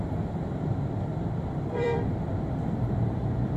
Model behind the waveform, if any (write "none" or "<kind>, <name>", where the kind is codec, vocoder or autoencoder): vocoder, BigVGAN v2